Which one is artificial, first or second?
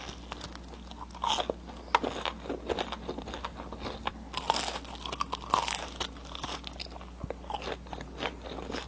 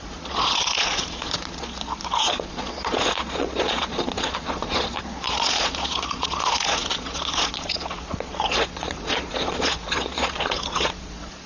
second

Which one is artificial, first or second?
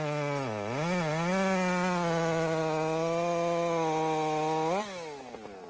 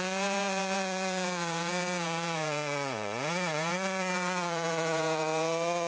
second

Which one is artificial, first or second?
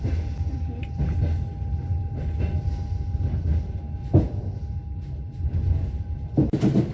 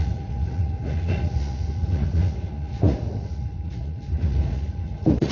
second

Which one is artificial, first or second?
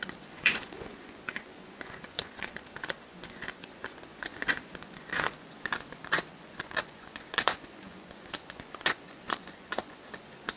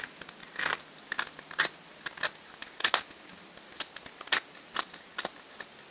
first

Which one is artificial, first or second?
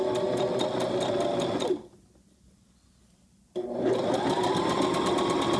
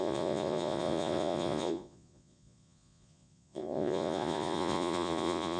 second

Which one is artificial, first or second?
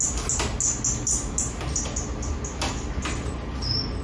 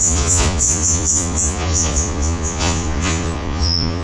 second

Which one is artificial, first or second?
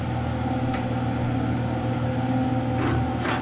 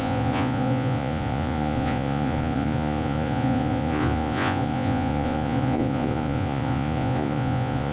second